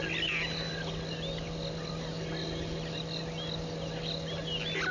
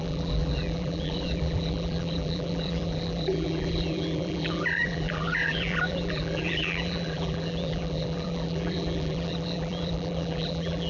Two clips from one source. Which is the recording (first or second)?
first